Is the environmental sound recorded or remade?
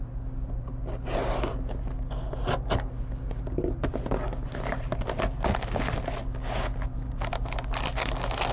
recorded